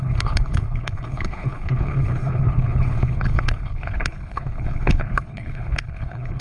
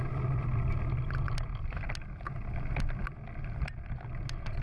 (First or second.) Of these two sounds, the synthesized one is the first